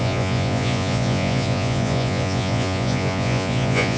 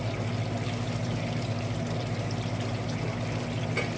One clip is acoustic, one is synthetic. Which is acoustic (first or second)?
second